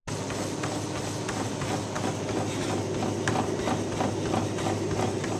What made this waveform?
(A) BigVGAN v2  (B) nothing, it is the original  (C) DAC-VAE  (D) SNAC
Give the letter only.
B